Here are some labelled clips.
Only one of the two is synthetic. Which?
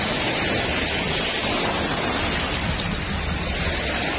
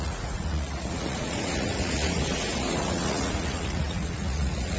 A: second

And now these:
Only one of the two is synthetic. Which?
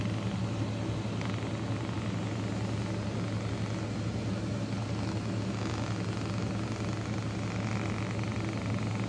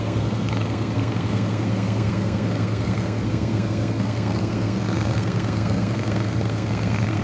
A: second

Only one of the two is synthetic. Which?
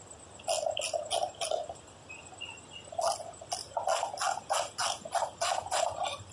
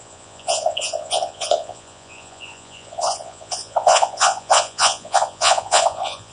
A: second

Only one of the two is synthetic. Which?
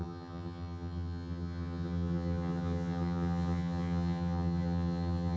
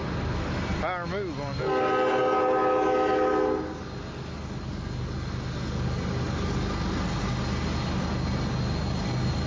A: first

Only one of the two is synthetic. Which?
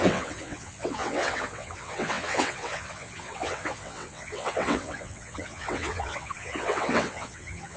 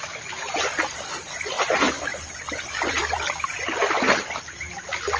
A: first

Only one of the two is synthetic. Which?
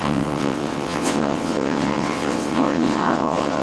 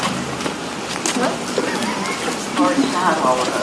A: first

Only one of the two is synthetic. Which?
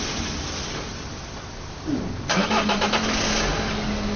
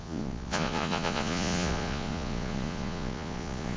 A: second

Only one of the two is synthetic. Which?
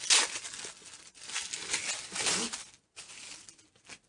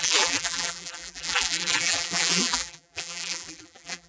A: second